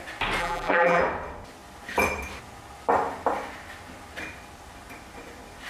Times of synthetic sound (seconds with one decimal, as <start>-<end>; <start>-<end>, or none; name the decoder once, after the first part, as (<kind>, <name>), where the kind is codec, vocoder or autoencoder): 0.4-1.0 (vocoder, BigVGAN v2)